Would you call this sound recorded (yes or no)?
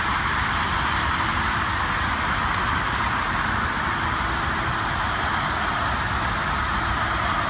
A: yes